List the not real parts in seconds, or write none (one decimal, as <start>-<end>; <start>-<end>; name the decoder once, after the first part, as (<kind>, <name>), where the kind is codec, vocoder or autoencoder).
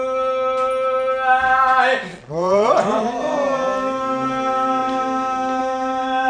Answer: 2.1-2.7 (vocoder, Vocos)